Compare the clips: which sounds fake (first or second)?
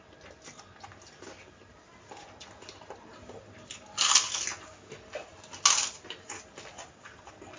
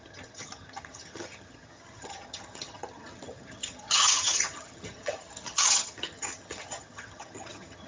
second